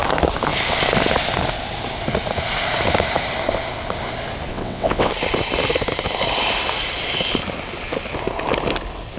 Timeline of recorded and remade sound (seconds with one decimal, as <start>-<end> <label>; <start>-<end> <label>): 0.0-4.5 recorded; 4.5-5.1 remade; 5.1-9.2 recorded